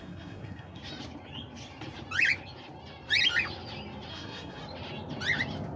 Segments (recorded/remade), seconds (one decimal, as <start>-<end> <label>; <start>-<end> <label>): 0.0-0.8 remade; 0.8-4.1 recorded; 4.1-4.6 remade; 4.6-5.8 recorded